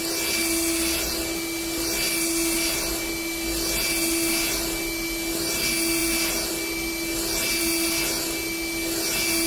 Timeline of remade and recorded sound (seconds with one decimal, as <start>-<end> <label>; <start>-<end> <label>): 0.0-9.5 recorded